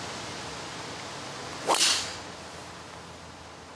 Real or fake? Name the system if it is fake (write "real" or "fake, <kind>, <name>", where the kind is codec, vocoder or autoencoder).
real